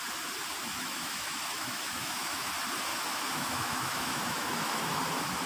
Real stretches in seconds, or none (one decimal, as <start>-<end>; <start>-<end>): 0.0-0.6; 2.5-2.9; 5.0-5.5